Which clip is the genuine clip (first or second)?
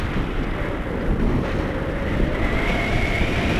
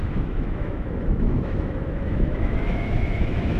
first